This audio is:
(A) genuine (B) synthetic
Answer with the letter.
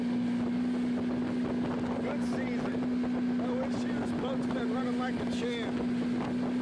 A